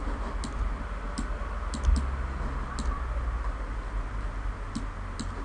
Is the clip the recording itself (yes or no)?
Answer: yes